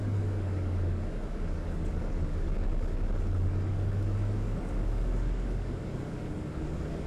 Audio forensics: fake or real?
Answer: fake